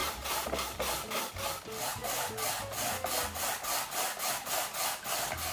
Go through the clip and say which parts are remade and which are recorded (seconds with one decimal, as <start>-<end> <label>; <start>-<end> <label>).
0.0-0.9 remade; 0.9-5.5 recorded